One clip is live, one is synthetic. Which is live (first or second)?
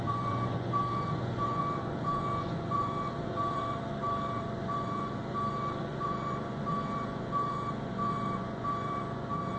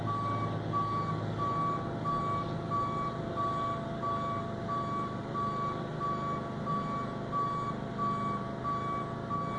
second